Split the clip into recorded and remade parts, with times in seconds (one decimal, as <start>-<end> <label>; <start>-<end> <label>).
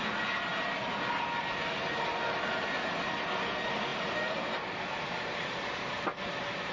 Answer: 0.0-3.9 recorded; 3.9-6.7 remade